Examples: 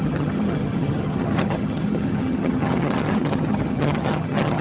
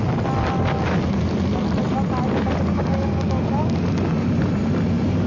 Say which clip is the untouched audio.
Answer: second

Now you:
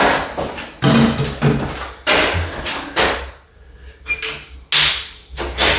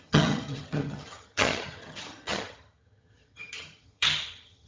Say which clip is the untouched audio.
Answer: first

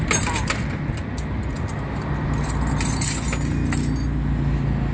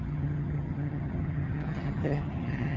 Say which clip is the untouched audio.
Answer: first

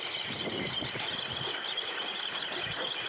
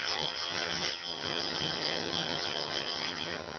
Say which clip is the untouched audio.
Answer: first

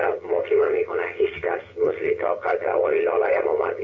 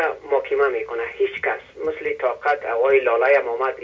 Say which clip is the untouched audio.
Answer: second